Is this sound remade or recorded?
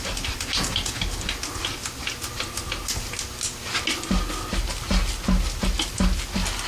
recorded